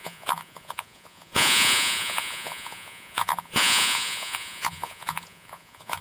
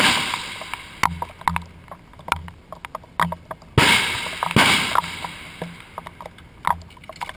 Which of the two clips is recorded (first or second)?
second